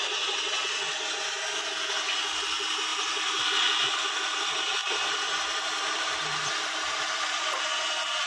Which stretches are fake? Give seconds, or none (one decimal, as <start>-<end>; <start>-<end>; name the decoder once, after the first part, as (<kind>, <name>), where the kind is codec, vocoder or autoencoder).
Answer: 2.9-4.1 (vocoder, BigVGAN v2); 4.8-7.7